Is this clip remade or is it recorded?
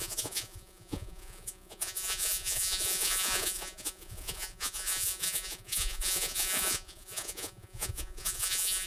remade